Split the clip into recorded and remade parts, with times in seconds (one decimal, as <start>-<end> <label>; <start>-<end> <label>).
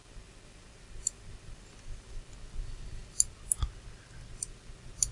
0.0-5.1 recorded